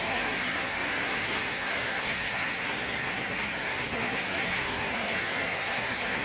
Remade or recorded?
remade